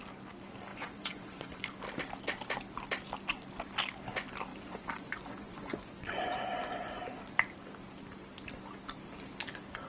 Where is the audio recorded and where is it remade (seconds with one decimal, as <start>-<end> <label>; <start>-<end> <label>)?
0.0-0.7 recorded; 0.7-1.7 remade; 1.7-4.5 recorded; 4.5-6.9 remade; 6.9-9.9 recorded